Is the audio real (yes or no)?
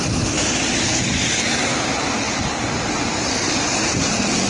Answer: yes